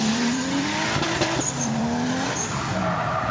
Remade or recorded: remade